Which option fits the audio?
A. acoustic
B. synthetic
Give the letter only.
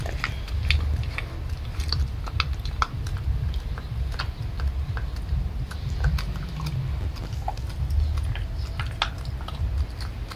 A